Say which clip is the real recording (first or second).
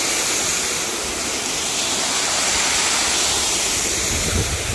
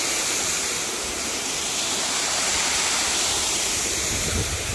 first